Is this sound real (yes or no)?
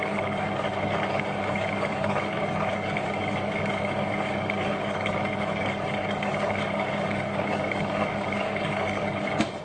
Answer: no